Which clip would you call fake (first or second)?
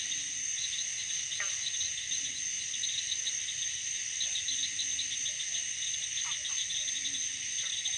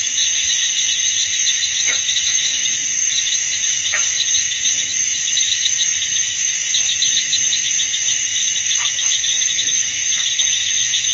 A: second